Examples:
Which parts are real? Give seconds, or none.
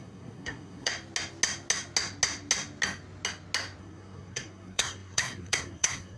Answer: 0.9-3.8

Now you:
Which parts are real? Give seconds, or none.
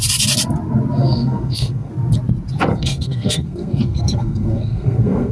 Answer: 0.0-1.0; 1.9-2.7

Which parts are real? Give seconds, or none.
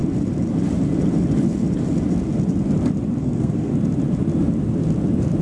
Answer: 0.0-3.2; 3.7-5.4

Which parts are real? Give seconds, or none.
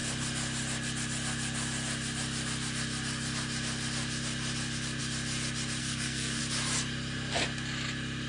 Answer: 0.0-5.8; 6.4-8.3